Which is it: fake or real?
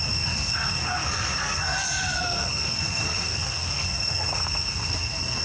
fake